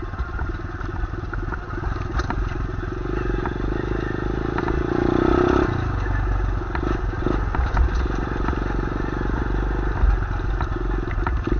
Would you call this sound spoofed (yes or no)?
no